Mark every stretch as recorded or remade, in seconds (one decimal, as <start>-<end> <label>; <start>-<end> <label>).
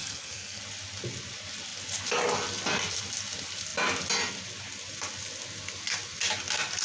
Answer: 0.0-0.6 remade; 0.6-6.8 recorded